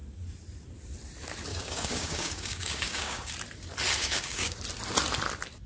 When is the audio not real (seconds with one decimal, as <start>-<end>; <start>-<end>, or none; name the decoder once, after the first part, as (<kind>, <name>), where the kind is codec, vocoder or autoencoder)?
1.5-3.3 (codec, DAC); 4.0-4.6